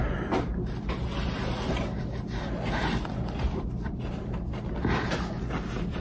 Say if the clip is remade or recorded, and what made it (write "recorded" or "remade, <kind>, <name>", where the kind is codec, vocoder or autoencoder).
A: recorded